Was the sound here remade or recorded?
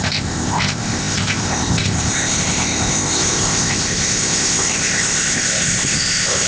remade